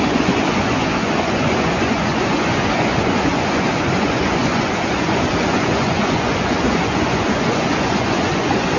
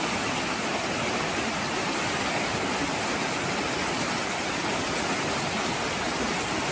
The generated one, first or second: first